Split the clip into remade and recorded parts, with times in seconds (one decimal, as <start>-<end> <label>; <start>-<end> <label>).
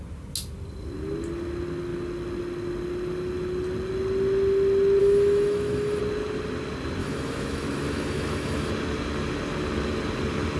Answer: 0.0-5.0 recorded; 5.0-6.0 remade; 6.0-7.0 recorded; 7.0-8.7 remade; 8.7-10.6 recorded